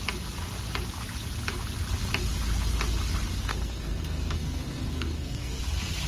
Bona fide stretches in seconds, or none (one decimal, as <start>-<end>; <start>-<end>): 0.0-3.5; 5.6-6.1